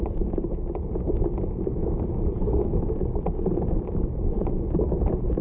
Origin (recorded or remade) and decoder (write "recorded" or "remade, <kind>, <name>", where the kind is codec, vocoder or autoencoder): recorded